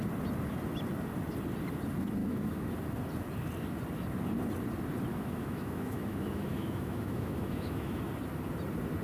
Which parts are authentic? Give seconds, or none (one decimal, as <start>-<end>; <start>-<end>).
0.0-2.2; 2.7-5.1; 8.0-9.0